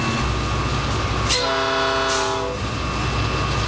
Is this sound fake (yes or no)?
no